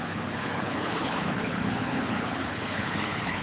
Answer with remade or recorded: remade